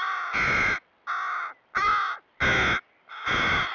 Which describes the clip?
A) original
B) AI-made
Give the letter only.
A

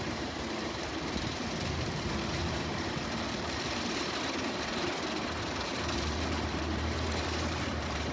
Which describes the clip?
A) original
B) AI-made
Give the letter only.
B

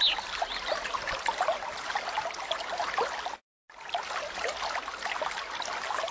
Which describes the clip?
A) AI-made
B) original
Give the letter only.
B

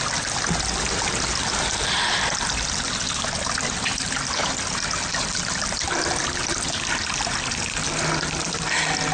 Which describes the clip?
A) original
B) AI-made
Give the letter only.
A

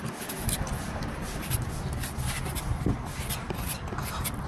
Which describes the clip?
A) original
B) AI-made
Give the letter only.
A